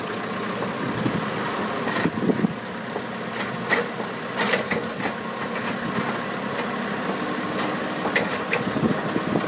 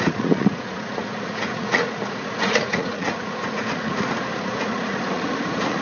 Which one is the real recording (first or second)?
first